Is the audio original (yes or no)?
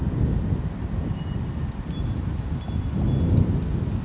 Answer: yes